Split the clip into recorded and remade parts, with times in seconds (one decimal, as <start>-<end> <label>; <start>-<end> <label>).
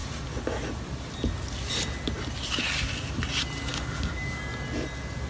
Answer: 0.0-5.3 recorded